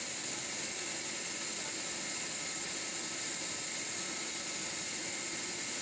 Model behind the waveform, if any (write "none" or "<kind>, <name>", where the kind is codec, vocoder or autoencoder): none